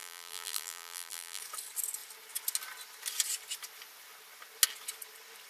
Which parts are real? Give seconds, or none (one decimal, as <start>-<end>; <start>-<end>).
1.4-5.5